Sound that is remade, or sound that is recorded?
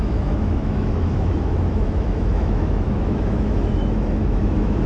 remade